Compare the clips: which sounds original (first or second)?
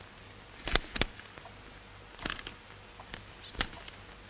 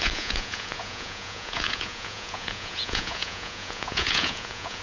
first